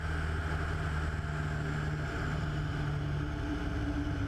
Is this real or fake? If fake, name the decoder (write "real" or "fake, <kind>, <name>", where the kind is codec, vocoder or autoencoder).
real